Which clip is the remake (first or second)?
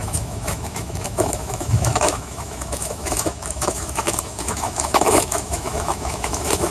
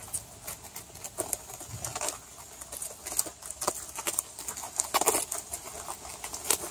first